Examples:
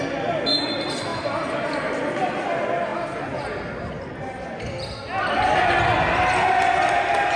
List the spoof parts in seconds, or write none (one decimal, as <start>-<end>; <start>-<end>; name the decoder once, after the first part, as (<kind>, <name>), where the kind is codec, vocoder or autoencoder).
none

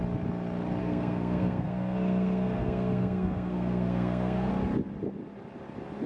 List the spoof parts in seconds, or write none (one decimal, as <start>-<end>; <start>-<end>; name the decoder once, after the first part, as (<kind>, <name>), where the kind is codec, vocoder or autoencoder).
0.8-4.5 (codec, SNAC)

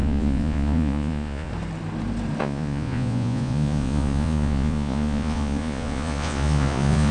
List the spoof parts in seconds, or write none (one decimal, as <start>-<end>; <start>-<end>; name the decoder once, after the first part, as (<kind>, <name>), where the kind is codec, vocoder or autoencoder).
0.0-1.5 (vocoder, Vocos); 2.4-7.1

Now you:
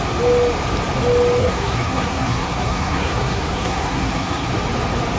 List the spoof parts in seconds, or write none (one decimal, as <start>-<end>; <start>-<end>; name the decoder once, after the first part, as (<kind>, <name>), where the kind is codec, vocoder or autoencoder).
1.4-4.5 (codec, SNAC)

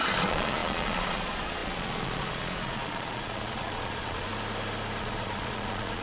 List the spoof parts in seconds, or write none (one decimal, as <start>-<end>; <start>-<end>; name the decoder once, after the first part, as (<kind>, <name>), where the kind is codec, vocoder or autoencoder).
0.0-4.3 (vocoder, Vocos); 5.0-6.0

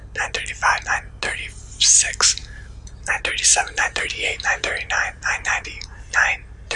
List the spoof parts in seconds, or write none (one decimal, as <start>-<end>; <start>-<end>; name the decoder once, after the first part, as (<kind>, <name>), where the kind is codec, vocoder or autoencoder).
2.4-3.1 (vocoder, BigVGAN v2); 3.6-6.8

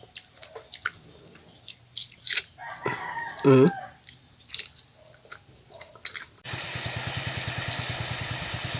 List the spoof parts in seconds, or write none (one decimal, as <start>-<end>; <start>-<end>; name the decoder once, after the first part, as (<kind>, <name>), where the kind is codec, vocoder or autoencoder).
none

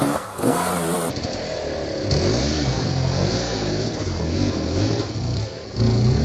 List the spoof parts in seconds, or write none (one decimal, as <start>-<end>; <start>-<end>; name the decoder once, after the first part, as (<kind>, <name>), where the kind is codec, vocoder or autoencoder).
0.0-0.7 (codec, SNAC); 2.5-6.2